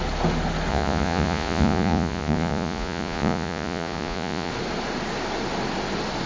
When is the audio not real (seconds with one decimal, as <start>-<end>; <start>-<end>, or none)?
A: 0.7-4.5